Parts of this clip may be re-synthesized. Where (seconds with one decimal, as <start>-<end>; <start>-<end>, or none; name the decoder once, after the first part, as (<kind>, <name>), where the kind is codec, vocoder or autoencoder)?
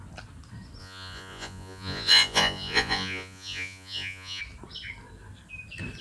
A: 0.8-4.4 (vocoder, Vocos)